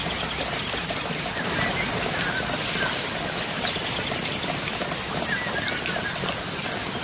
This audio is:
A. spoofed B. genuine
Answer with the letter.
B